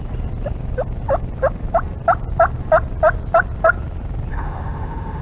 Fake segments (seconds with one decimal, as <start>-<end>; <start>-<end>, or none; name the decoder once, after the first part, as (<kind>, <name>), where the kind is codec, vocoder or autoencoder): 4.3-5.2 (autoencoder, DAC-VAE)